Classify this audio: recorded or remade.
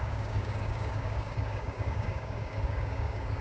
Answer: remade